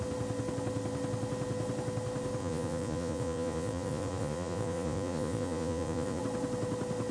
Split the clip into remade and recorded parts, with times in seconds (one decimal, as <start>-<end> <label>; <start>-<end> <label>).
0.0-2.4 recorded; 2.4-6.2 remade; 6.2-7.1 recorded